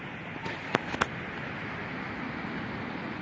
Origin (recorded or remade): recorded